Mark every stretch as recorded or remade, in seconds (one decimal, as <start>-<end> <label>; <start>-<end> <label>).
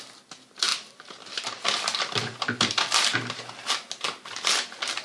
0.0-0.7 recorded; 0.7-3.7 remade; 3.7-5.0 recorded